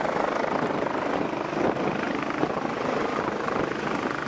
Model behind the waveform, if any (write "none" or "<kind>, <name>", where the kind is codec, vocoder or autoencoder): none